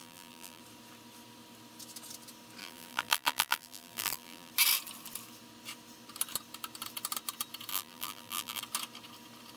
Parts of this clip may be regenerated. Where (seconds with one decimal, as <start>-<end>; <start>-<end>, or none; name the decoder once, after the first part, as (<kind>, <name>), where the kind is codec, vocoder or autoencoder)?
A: 0.0-0.6 (vocoder, BigVGAN v2); 2.6-4.5; 7.7-8.6